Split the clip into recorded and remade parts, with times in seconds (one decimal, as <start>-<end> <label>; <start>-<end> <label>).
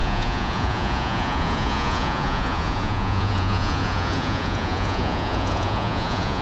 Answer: 0.0-6.4 remade